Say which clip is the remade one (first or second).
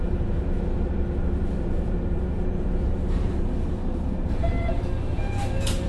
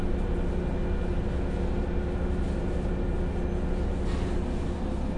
first